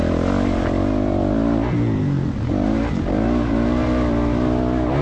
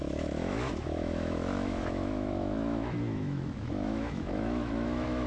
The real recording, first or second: first